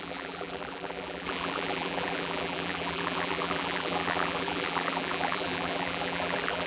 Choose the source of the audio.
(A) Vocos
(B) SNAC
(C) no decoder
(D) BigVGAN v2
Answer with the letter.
D